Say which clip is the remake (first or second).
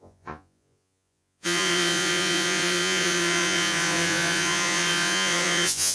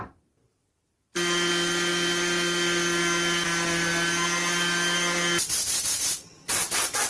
first